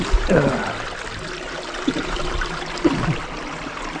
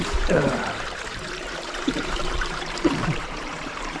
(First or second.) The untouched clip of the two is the first